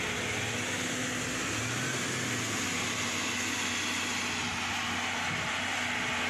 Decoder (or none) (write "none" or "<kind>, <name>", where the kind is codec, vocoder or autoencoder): none